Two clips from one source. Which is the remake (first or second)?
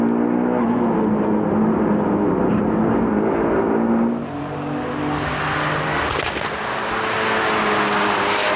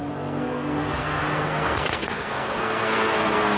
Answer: second